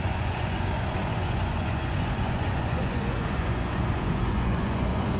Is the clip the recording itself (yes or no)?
no